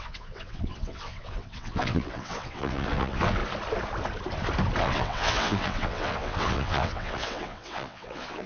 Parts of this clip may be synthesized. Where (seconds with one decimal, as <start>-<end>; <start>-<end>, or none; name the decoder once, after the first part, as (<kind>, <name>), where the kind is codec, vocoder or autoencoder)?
0.0-3.4 (vocoder, WaveNeXt); 4.8-8.5